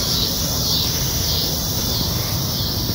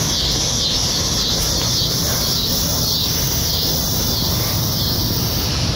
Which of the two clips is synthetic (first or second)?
first